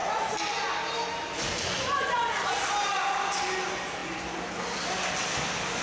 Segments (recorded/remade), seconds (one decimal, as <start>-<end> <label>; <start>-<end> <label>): 0.0-5.8 recorded